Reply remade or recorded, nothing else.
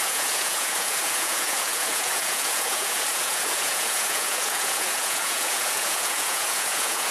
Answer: remade